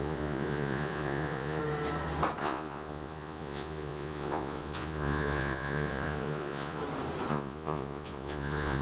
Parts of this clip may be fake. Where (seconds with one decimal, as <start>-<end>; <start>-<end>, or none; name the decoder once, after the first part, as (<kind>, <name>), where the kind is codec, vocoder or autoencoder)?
0.0-1.6 (vocoder, Vocos); 2.4-6.8; 7.3-8.8